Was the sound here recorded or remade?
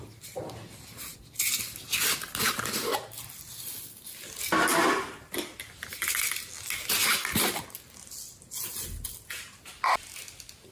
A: recorded